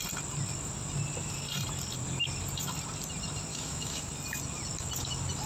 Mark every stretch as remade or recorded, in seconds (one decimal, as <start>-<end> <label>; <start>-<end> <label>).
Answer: 0.0-3.5 recorded; 3.5-4.1 remade; 4.1-5.5 recorded